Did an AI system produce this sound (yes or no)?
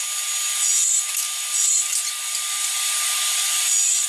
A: no